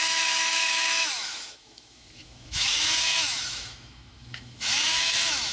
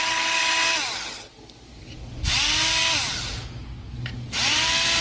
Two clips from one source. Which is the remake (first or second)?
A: first